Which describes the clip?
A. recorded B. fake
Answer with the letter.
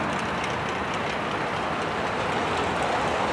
A